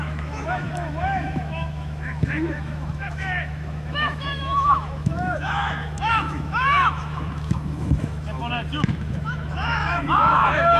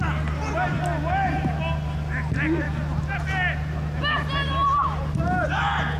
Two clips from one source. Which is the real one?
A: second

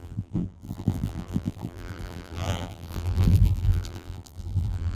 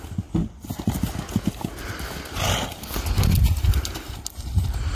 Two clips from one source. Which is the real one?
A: second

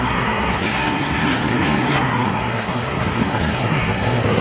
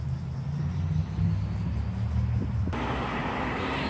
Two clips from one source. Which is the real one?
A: second